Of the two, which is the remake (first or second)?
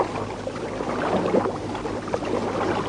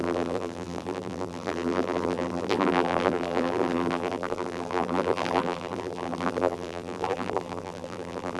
second